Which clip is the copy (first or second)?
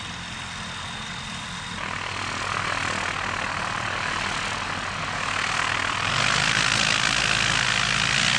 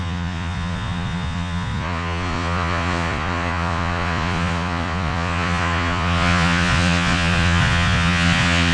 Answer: second